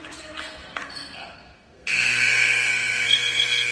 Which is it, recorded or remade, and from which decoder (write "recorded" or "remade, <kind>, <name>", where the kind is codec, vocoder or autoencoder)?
remade, codec, SNAC